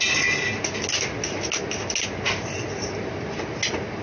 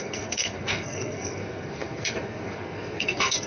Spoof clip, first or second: second